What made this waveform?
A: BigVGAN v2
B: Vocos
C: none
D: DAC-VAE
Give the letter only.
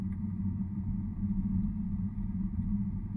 B